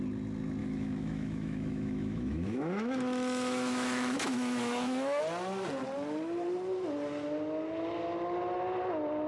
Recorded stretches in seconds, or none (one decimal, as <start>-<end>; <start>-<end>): 0.0-0.6; 5.2-9.3